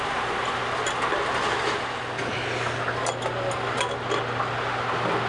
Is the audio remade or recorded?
recorded